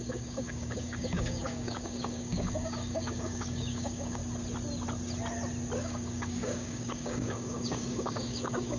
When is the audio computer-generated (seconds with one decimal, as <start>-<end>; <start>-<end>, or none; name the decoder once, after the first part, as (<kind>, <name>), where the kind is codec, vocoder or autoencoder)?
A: 0.0-4.2 (codec, DAC); 5.8-8.8